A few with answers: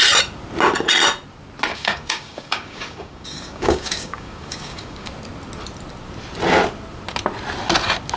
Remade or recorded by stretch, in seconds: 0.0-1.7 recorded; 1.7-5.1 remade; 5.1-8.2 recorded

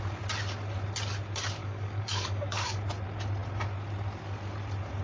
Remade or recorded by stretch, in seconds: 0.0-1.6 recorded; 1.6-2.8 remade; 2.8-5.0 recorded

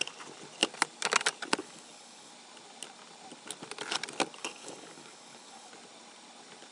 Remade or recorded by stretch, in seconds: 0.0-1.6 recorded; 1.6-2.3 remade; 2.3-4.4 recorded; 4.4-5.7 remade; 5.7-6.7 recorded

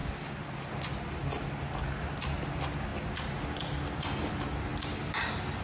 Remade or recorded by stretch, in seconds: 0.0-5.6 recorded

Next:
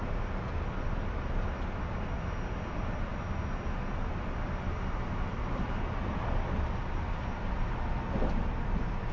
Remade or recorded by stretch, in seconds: 0.0-9.1 recorded

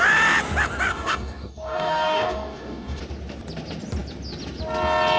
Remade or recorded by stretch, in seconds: 0.0-0.9 recorded; 0.9-3.0 remade; 3.0-5.2 recorded

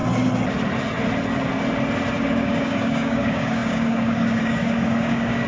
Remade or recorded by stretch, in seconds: 0.0-2.2 recorded; 2.2-5.5 remade